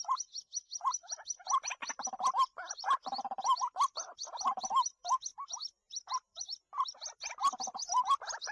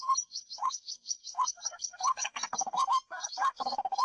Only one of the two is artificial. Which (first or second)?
second